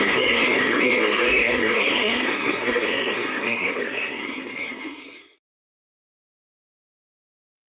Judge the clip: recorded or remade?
remade